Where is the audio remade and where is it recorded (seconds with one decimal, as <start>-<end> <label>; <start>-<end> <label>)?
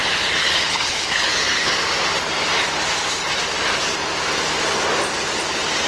0.0-0.4 recorded; 0.4-1.7 remade; 1.7-5.9 recorded